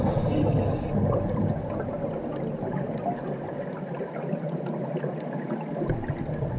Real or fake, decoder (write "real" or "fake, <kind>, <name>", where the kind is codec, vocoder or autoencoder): real